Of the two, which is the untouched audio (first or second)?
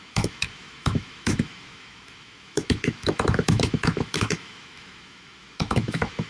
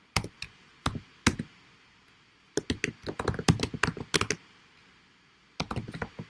second